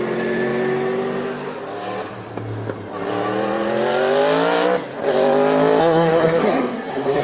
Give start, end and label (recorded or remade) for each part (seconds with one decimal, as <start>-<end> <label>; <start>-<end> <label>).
0.0-5.8 recorded; 5.8-7.2 remade